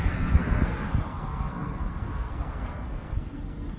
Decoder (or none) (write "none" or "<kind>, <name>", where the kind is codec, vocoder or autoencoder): codec, SNAC